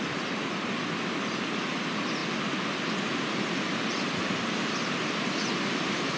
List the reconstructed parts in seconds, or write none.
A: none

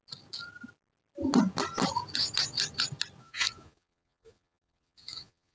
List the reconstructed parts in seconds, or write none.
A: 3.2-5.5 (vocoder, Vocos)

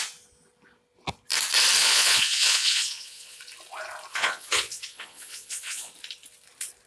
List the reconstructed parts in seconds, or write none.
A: 1.8-3.4 (vocoder, Vocos); 4.1-5.9

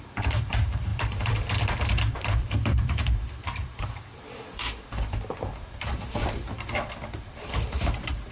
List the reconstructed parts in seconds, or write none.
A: 0.0-8.3 (vocoder, BigVGAN v2)

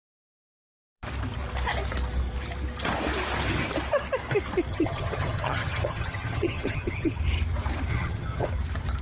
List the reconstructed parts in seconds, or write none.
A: 4.7-7.2 (vocoder, HiFi-GAN); 7.9-8.5

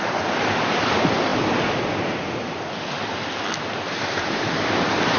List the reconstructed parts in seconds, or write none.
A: none

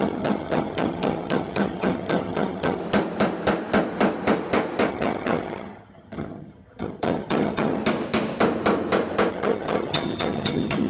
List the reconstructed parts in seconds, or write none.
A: 0.0-2.8 (vocoder, HiFi-GAN); 4.9-7.8; 9.3-10.9

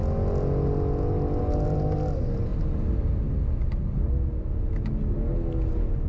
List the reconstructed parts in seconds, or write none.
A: none